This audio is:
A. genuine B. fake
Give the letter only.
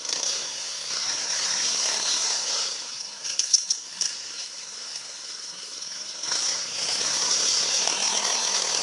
B